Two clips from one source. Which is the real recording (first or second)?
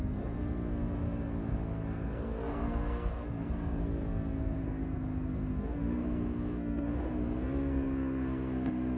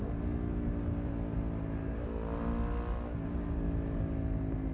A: second